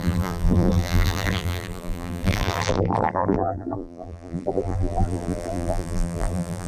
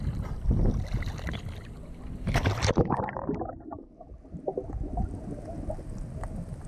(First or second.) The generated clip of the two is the first